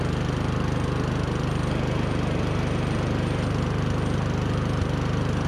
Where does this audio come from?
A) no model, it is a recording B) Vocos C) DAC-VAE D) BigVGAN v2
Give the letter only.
A